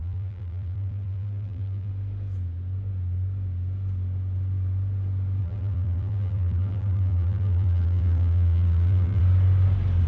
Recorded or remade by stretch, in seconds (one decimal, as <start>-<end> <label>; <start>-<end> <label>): 0.0-1.9 remade; 1.9-5.4 recorded; 5.4-9.2 remade; 9.2-10.1 recorded